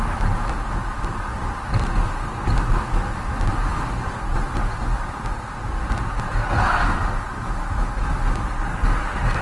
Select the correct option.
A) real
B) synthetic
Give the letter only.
A